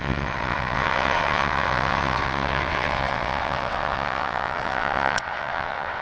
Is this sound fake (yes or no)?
yes